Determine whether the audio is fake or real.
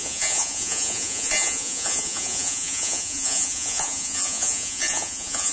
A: fake